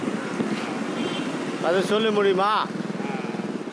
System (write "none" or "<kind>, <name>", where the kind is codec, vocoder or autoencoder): none